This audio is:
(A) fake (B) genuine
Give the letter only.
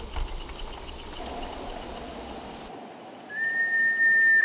B